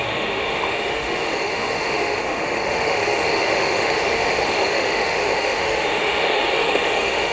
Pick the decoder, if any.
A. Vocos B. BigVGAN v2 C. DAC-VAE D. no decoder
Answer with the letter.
C